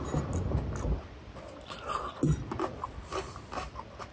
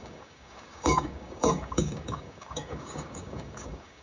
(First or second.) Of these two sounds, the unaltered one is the first